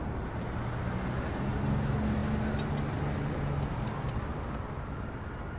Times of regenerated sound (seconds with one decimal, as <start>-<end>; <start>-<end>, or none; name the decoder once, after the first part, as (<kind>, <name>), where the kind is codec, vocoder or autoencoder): none